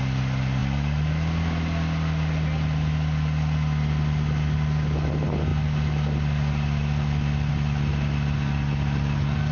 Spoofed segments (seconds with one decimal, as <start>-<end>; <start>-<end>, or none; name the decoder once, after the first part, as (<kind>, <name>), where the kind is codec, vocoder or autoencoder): none